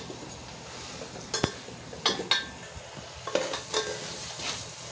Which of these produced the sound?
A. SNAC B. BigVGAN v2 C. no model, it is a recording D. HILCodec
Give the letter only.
C